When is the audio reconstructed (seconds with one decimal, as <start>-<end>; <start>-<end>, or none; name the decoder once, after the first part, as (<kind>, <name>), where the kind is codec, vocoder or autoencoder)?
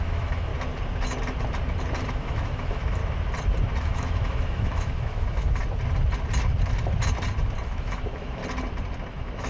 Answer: 0.0-0.5 (autoencoder, DAC-VAE); 2.1-3.0; 3.8-5.6; 7.6-8.4; 9.1-9.5